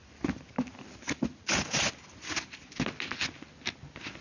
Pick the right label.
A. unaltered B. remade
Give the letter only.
A